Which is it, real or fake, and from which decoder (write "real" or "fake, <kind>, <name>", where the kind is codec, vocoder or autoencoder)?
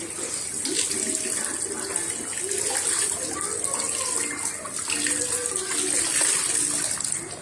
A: real